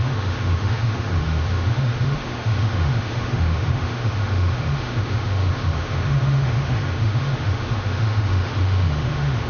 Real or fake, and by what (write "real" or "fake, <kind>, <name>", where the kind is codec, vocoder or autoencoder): fake, autoencoder, DAC-VAE